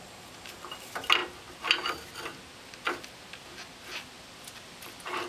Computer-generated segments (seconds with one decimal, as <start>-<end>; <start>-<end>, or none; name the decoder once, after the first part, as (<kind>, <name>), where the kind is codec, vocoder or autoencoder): none